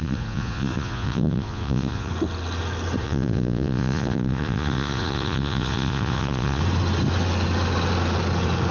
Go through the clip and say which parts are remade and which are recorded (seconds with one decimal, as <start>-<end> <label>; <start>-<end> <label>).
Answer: 0.0-2.1 remade; 2.1-3.0 recorded; 3.0-6.6 remade; 6.6-8.7 recorded